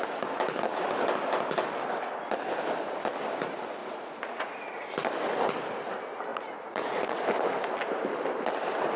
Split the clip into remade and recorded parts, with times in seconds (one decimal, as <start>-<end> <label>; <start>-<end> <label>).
0.0-3.8 recorded; 3.8-4.8 remade; 4.8-6.3 recorded; 6.3-7.2 remade; 7.2-9.0 recorded